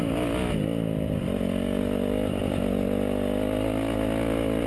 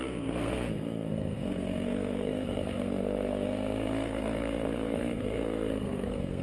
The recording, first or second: first